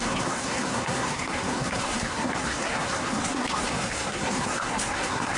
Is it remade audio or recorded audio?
remade